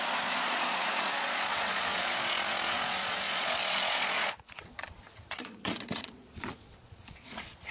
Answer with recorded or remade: remade